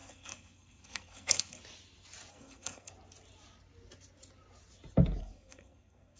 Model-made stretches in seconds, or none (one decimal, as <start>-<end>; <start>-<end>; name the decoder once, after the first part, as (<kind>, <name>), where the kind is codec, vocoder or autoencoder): 0.0-1.6 (codec, SNAC); 2.3-2.9; 5.2-6.2